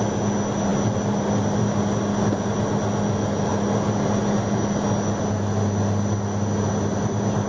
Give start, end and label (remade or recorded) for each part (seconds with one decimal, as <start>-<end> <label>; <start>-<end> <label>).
0.0-7.5 recorded